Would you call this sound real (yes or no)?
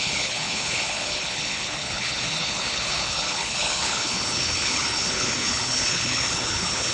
no